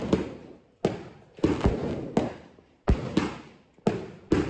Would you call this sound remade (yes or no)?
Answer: no